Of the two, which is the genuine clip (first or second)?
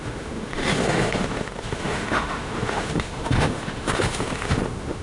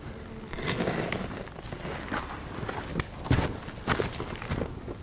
second